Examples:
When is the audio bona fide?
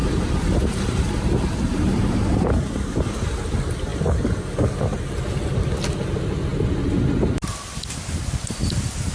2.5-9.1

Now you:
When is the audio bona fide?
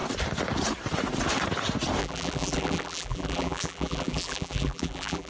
0.0-2.0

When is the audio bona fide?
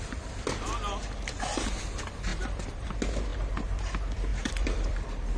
0.0-2.3; 2.9-4.3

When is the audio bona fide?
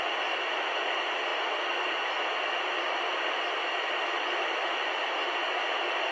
0.0-6.1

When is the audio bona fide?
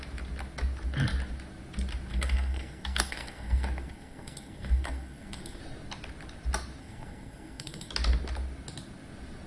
0.0-2.1; 5.6-6.8; 7.9-9.5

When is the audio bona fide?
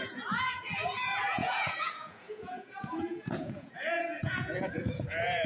none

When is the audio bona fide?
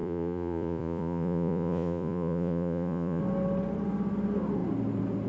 3.2-5.3